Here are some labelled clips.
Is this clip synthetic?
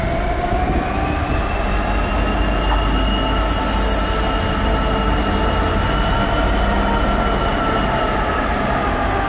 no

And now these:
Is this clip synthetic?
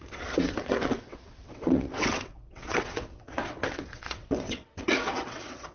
yes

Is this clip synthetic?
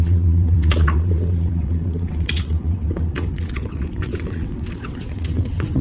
yes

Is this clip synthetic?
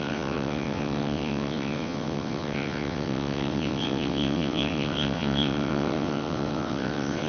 yes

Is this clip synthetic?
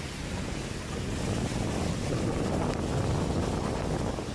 no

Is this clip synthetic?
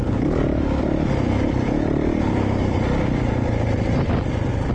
no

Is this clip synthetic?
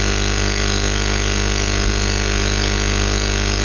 no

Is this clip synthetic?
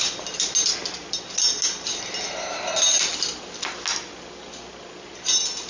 no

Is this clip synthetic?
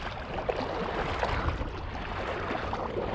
no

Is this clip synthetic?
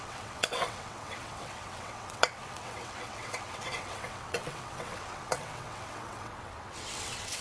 yes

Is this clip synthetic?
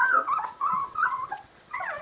yes